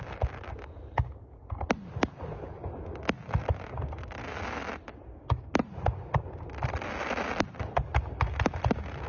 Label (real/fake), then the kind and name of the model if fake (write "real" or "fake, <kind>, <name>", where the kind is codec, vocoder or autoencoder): real